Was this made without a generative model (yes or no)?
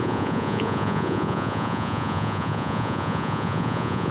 no